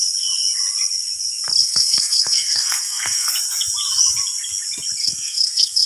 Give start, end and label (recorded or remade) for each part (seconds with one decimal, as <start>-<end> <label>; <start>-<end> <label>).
0.0-1.6 recorded; 1.6-3.3 remade; 3.3-5.0 recorded; 5.0-5.9 remade